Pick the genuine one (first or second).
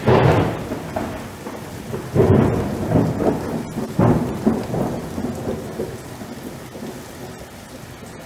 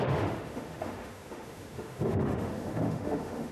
first